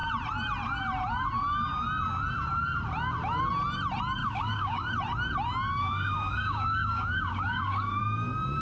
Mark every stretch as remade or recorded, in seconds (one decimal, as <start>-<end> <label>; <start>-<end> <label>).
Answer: 0.0-4.2 recorded; 4.2-4.9 remade; 4.9-5.7 recorded; 5.7-8.0 remade; 8.0-8.6 recorded